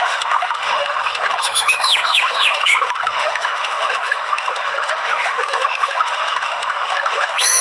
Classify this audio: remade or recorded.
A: remade